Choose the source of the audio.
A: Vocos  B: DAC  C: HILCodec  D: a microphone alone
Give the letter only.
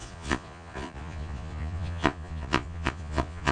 A